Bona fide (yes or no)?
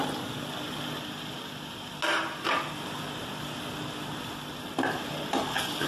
yes